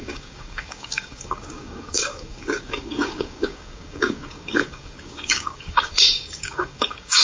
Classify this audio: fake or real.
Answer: fake